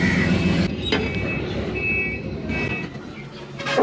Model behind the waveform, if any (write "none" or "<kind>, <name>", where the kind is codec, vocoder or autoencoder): none